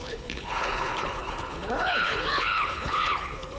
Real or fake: fake